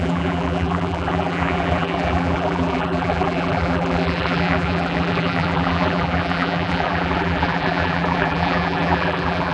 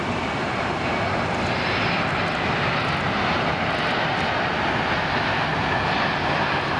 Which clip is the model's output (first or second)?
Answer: first